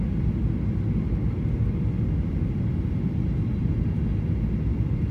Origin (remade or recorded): recorded